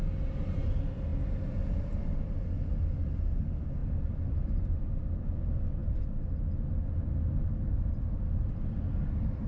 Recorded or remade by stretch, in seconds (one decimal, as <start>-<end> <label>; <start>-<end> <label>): 0.0-9.5 recorded